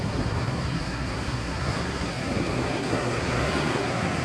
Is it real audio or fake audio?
fake